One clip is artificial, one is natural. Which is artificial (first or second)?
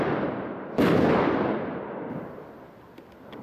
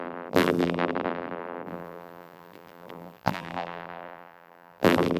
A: second